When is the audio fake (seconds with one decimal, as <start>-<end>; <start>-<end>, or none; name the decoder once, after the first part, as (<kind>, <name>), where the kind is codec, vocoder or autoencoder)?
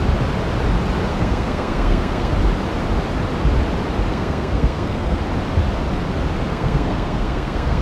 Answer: 1.1-2.3 (codec, SNAC); 4.1-5.2; 6.5-7.8